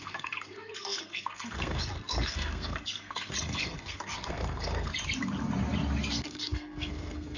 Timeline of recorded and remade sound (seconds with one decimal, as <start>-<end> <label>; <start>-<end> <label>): 0.0-4.9 remade; 4.9-6.1 recorded; 6.1-7.4 remade